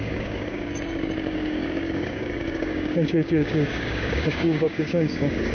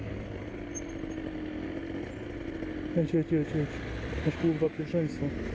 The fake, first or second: first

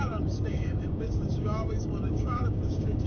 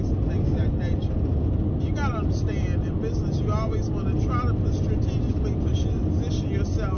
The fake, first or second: first